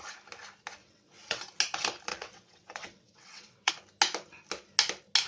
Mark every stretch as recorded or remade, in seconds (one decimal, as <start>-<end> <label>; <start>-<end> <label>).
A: 0.0-0.8 recorded; 0.8-1.4 remade; 1.4-2.1 recorded; 2.1-3.7 remade; 3.7-5.3 recorded